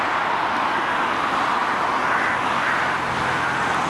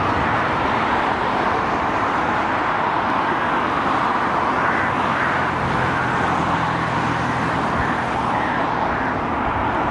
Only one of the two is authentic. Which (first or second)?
first